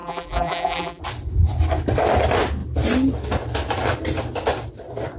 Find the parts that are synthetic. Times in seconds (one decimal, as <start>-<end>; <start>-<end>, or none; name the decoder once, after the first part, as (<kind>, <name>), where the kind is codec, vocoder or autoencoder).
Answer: 0.0-1.0 (vocoder, BigVGAN v2)